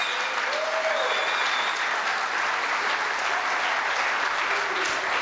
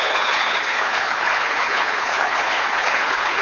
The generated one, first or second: second